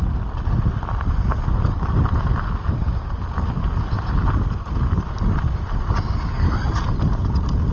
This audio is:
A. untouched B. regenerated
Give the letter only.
A